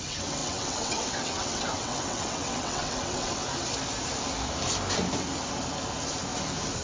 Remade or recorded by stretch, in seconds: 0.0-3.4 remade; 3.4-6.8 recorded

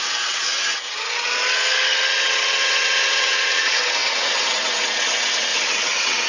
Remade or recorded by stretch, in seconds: 0.0-1.4 remade; 1.4-2.1 recorded; 2.1-6.3 remade

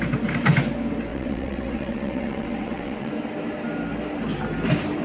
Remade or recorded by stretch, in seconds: 0.0-1.1 recorded; 1.1-3.1 remade; 3.1-5.0 recorded

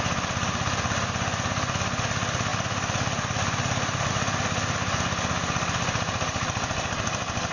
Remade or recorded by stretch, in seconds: 0.0-7.5 recorded

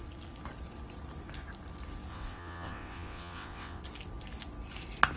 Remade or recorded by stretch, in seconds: 0.0-2.1 recorded; 2.1-3.8 remade; 3.8-5.2 recorded

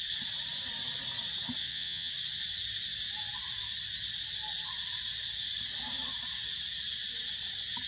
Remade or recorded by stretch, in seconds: 0.0-1.6 recorded; 1.6-2.1 remade; 2.1-7.9 recorded